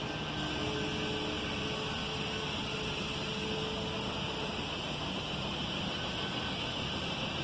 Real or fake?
real